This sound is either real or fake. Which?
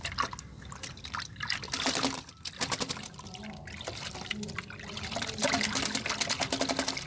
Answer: real